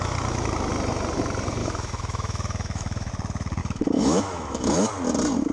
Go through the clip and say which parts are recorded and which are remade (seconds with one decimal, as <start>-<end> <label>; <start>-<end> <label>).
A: 0.0-1.6 recorded; 1.6-3.1 remade; 3.1-3.6 recorded; 3.6-4.9 remade; 4.9-5.5 recorded